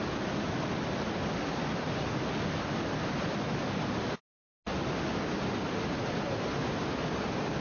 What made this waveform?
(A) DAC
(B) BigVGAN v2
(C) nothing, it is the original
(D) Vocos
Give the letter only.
C